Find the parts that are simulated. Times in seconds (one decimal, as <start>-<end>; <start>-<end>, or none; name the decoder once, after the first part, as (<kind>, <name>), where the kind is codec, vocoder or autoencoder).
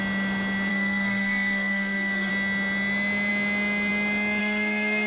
0.7-2.3 (codec, SNAC); 4.4-5.1